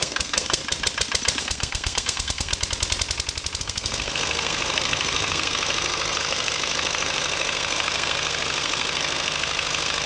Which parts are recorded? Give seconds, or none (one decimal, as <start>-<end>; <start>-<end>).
0.6-1.4; 2.5-3.6